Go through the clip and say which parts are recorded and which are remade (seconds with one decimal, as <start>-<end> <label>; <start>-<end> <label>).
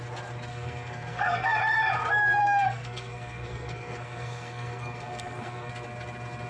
0.0-0.5 recorded; 0.5-1.6 remade; 1.6-2.4 recorded; 2.4-5.7 remade; 5.7-6.5 recorded